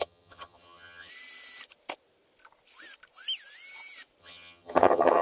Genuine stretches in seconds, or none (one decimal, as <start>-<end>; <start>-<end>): 1.1-4.2